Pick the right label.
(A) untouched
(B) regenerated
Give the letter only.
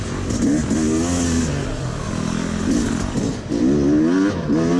A